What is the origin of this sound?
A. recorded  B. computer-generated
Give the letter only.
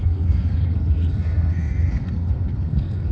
B